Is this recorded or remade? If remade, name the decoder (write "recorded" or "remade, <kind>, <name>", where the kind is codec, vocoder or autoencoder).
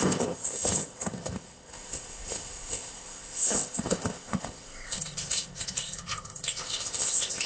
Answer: remade, codec, ZipCodec